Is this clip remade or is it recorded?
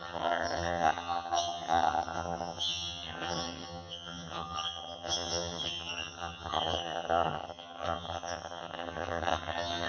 remade